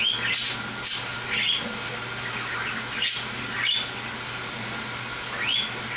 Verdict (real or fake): real